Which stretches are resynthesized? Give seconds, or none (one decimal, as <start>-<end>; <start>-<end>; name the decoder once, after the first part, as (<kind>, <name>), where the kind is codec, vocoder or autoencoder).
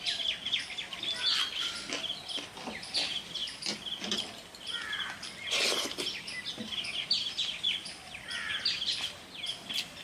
none